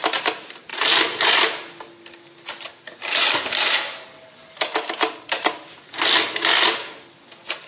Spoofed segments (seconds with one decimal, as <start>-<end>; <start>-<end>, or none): none